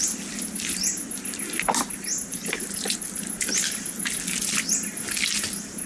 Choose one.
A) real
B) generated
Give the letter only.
A